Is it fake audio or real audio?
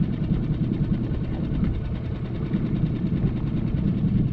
real